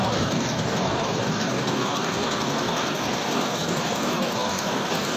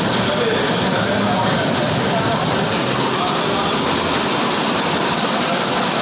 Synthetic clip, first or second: first